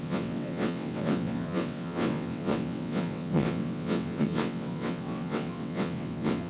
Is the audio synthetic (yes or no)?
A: yes